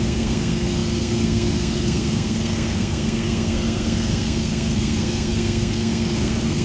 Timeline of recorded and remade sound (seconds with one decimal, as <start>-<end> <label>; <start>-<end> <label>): 0.0-6.6 remade